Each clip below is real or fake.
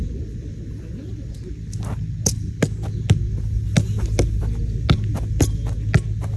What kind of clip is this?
real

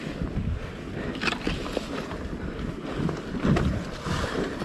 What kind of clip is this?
real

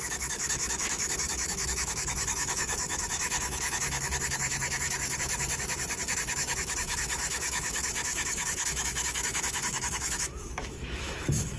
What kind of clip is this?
fake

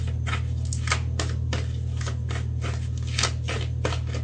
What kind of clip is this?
real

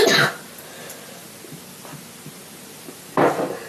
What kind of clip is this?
real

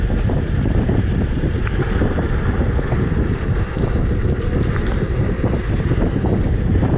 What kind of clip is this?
fake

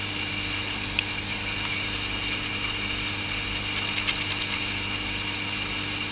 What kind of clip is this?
real